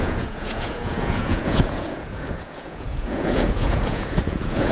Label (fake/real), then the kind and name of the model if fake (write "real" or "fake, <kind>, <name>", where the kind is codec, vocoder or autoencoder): fake, vocoder, Vocos